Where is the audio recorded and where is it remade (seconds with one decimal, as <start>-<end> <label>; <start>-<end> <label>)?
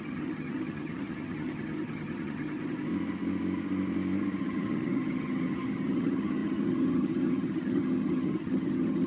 0.0-2.9 remade; 2.9-4.4 recorded; 4.4-9.1 remade